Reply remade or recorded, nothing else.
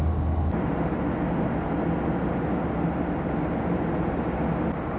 recorded